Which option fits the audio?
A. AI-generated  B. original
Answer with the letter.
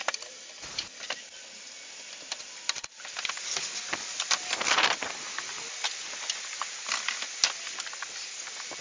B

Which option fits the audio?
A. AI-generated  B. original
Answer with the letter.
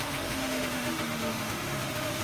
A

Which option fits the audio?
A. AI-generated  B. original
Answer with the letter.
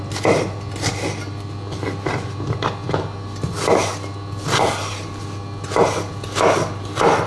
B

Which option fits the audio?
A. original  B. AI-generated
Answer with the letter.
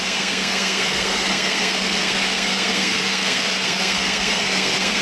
B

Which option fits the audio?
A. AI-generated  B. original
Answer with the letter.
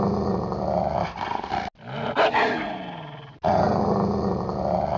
B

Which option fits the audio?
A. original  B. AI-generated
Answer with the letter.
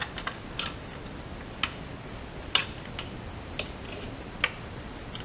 A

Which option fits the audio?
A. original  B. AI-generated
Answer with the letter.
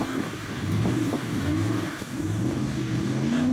B